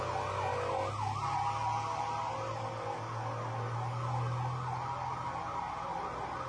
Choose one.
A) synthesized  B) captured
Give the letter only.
B